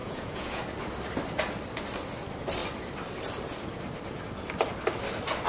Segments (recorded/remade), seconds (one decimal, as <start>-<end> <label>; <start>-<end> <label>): 0.0-0.6 remade; 0.6-5.5 recorded